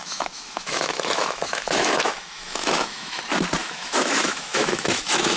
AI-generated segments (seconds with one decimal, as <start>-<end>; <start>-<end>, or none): 0.0-3.2; 3.6-5.4